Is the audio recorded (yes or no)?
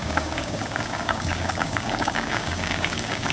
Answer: no